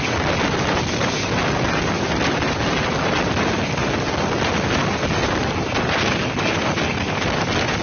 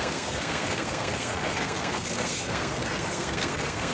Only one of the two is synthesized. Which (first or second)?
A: second